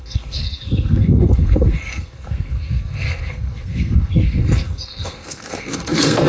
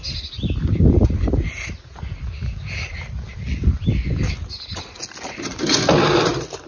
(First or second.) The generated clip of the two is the first